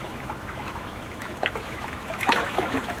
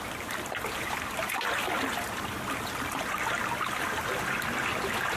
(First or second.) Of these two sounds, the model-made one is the first